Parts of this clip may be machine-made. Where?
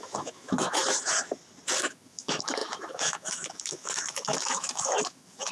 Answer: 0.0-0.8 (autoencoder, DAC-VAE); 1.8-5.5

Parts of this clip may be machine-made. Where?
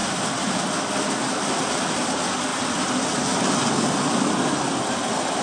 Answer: none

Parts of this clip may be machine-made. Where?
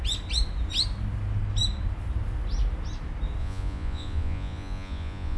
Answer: 3.4-5.4 (vocoder, Vocos)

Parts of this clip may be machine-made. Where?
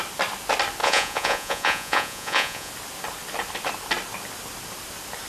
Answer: 0.8-2.7 (vocoder, Vocos)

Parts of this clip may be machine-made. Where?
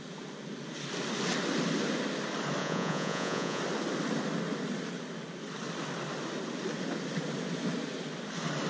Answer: 2.6-3.6 (vocoder, Vocos)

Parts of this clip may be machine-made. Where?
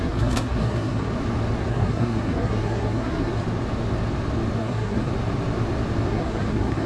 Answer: 0.0-1.1 (codec, SNAC); 1.7-3.3; 4.6-5.1; 6.1-6.9